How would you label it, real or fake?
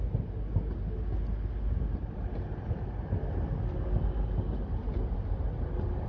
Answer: real